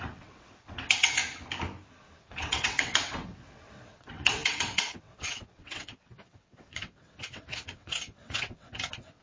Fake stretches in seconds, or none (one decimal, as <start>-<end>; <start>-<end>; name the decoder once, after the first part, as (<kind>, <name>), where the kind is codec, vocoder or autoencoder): 0.0-1.2 (vocoder, WaveNeXt); 2.2-9.2